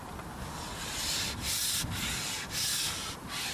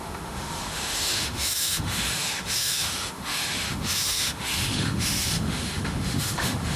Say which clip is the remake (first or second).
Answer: second